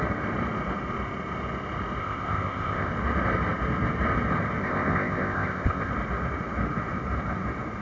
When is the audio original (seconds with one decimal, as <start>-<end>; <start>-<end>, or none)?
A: 0.0-2.0; 2.9-4.6; 5.9-7.8